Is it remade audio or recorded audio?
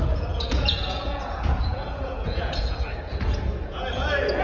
remade